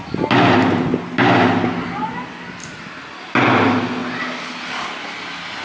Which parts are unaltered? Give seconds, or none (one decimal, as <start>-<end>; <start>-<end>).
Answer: 0.0-5.6